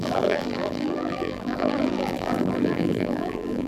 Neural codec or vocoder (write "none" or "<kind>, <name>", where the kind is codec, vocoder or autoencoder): vocoder, BigVGAN v2